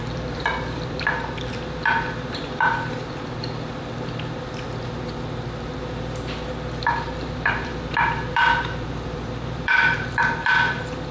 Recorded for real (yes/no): no